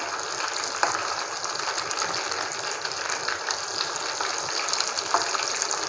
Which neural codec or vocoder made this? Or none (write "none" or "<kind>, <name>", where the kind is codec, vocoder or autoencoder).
none